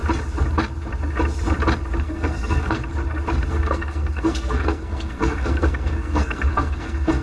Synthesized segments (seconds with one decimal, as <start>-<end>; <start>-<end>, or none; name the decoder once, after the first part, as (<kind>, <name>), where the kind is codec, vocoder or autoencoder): 2.0-2.8 (codec, SNAC); 3.5-7.2

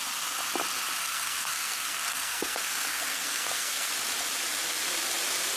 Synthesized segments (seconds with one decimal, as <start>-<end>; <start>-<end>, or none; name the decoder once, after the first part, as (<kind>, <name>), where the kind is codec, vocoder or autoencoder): 1.0-3.9 (codec, SNAC)